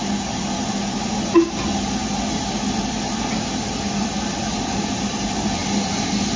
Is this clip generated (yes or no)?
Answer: no